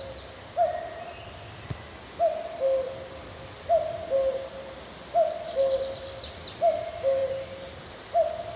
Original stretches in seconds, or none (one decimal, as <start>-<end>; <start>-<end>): 0.0-8.6

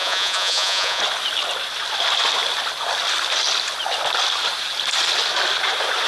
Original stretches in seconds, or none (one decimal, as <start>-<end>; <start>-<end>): 1.0-6.1

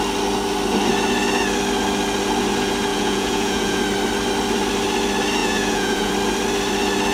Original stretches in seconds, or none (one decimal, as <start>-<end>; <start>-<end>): 0.0-2.9; 3.8-5.4; 6.1-7.1

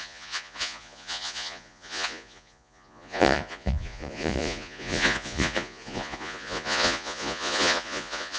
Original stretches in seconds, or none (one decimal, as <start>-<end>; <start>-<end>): none

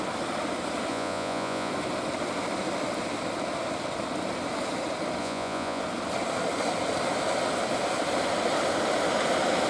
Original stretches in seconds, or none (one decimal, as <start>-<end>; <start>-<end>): 0.0-0.9; 1.7-5.2; 5.8-9.7

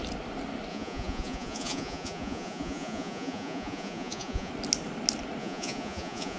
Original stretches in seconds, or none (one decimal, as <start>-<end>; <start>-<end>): 0.0-0.7; 4.5-5.4

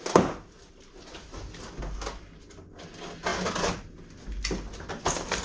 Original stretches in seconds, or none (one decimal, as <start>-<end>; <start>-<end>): 0.0-5.4